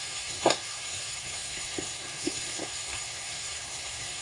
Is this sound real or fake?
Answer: fake